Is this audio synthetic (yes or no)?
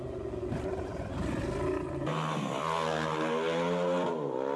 no